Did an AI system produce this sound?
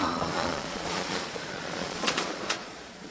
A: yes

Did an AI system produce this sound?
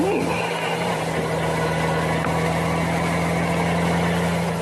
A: no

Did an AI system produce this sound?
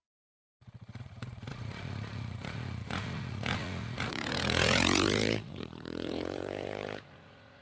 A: yes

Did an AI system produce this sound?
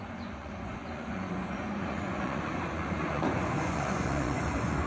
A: yes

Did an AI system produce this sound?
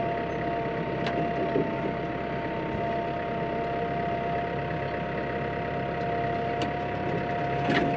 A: no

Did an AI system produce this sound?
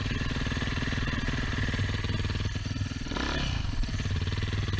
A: no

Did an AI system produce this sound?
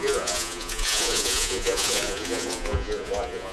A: yes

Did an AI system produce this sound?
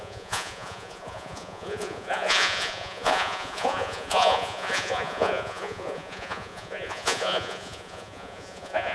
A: yes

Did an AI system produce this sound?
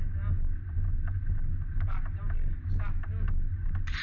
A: no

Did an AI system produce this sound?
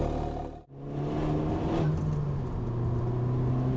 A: no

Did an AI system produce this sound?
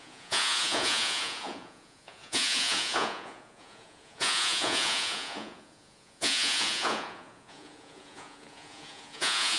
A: yes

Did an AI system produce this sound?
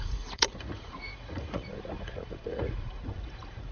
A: yes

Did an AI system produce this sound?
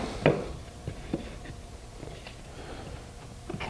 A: no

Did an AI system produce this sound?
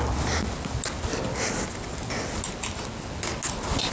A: no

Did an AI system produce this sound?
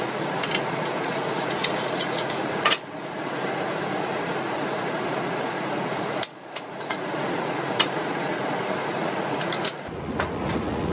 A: yes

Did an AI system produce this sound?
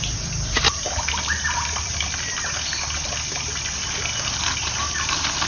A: no